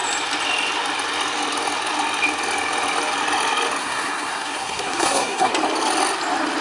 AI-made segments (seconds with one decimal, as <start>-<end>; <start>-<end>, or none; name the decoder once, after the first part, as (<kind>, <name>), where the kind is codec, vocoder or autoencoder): 3.8-5.5 (codec, SNAC)